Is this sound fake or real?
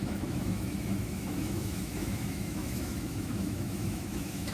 fake